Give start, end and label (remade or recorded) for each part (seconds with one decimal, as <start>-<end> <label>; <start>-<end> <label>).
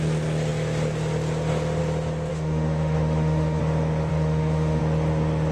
0.0-2.3 recorded; 2.3-3.6 remade; 3.6-4.1 recorded; 4.1-4.8 remade; 4.8-5.5 recorded